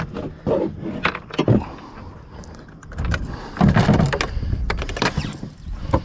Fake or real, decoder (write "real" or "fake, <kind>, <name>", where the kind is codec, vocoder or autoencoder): real